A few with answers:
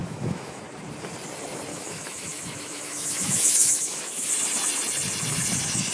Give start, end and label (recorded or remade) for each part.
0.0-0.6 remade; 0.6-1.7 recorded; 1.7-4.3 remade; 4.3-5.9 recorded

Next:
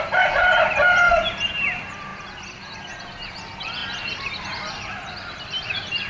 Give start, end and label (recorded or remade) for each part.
0.0-6.1 recorded

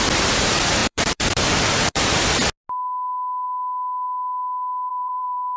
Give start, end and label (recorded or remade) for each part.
0.0-0.8 recorded; 0.8-2.2 remade; 2.2-4.9 recorded; 4.9-5.6 remade

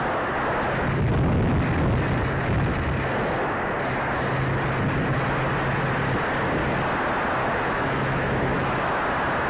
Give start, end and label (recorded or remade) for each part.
0.0-7.4 recorded; 7.4-8.9 remade; 8.9-9.5 recorded

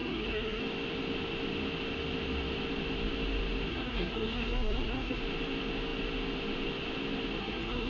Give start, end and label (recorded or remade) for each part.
0.0-0.6 remade; 0.6-3.7 recorded; 3.7-5.2 remade; 5.2-7.4 recorded; 7.4-7.9 remade

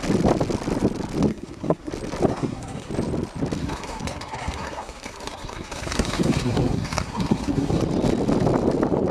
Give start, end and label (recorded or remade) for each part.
0.0-1.3 recorded; 1.3-1.9 remade; 1.9-2.3 recorded; 2.3-2.9 remade; 2.9-3.6 recorded; 3.6-7.8 remade; 7.8-9.1 recorded

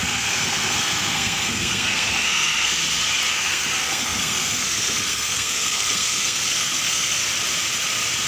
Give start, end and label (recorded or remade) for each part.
0.0-2.8 remade; 2.8-3.3 recorded; 3.3-7.2 remade; 7.2-8.3 recorded

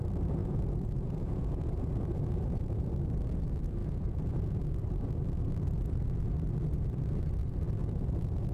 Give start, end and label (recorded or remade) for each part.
0.0-0.4 recorded; 0.4-2.9 remade; 2.9-3.8 recorded; 3.8-4.6 remade; 4.6-7.8 recorded; 7.8-8.5 remade